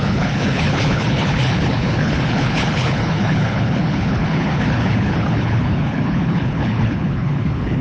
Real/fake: fake